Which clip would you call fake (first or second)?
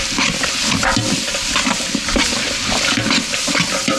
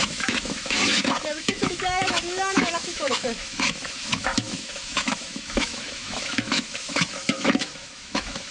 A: second